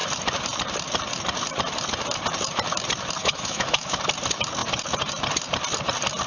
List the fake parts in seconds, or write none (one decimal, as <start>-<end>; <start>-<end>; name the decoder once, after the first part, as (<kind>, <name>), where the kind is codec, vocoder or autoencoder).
3.2-4.0 (autoencoder, DAC-VAE)